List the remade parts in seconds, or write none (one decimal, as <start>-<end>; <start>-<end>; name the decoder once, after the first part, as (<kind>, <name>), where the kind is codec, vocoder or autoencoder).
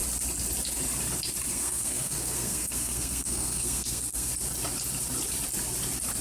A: 1.5-4.3 (codec, SNAC)